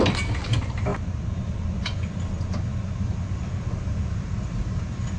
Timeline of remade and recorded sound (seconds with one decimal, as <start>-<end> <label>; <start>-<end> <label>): 0.0-5.2 recorded